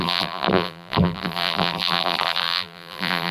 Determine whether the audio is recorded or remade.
remade